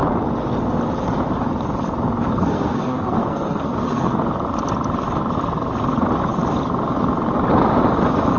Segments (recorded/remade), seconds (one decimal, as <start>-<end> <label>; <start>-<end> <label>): 0.0-2.3 recorded; 2.3-4.2 remade; 4.2-8.4 recorded

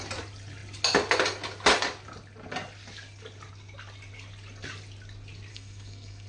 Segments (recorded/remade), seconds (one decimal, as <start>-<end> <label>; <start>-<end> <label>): 0.0-5.5 recorded; 5.5-6.3 remade

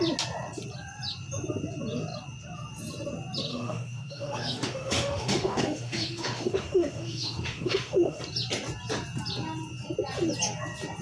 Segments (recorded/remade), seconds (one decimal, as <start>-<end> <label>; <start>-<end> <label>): 0.0-3.5 recorded; 3.5-8.2 remade; 8.2-11.0 recorded

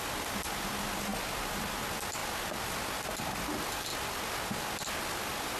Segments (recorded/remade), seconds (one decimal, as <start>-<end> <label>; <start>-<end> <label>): 0.0-5.6 recorded

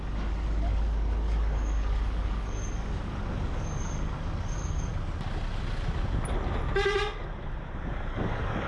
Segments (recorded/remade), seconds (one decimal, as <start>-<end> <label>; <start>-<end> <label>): 0.0-4.9 remade; 4.9-8.1 recorded; 8.1-8.7 remade

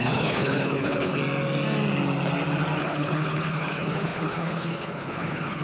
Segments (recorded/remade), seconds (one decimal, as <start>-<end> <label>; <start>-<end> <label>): 0.0-1.2 remade; 1.2-2.8 recorded; 2.8-5.6 remade